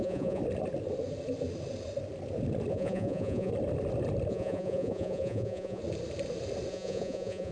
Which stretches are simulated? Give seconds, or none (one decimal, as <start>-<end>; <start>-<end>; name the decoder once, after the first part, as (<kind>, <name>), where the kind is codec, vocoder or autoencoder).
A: 0.0-0.4 (vocoder, Vocos); 2.7-3.5; 4.3-5.8; 6.7-7.5

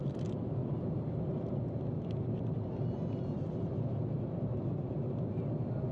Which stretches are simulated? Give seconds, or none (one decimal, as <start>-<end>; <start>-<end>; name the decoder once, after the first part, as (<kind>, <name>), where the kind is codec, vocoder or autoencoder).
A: none

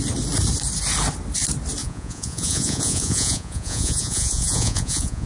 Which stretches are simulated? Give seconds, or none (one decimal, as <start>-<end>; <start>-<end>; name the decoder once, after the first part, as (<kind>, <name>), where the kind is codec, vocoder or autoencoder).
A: 1.8-5.3 (vocoder, Vocos)

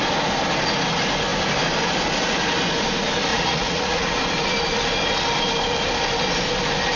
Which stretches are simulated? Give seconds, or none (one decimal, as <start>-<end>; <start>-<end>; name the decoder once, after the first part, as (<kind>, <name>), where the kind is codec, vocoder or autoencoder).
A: 3.3-4.2 (vocoder, Vocos)

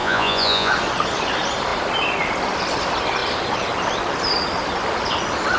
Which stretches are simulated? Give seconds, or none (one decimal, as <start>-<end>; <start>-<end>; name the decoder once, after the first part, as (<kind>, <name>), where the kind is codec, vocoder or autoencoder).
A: 0.0-0.7 (vocoder, Vocos)

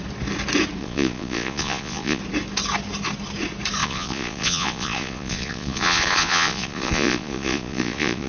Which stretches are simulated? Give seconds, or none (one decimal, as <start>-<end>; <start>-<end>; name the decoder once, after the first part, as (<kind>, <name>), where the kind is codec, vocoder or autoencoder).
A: 0.8-2.2 (vocoder, Vocos); 3.8-8.3